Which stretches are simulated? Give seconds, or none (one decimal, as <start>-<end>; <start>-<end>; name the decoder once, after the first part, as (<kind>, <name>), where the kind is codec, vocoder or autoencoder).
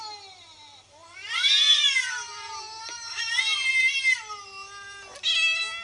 1.0-3.7 (vocoder, BigVGAN v2)